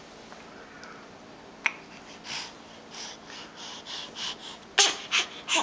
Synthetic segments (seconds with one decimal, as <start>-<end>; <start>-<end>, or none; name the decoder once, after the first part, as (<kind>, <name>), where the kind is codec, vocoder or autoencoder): none